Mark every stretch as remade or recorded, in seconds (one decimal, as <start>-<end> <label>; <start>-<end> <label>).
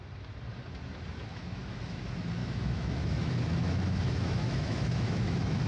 0.0-1.3 recorded; 1.3-2.0 remade; 2.0-2.4 recorded; 2.4-5.7 remade